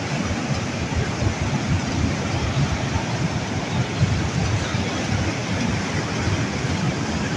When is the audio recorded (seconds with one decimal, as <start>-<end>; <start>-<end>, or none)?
0.0-7.4